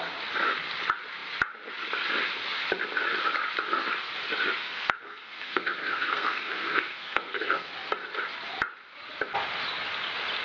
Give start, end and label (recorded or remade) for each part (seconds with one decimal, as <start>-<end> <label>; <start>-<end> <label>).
0.0-4.6 recorded; 4.6-7.7 remade; 7.7-10.4 recorded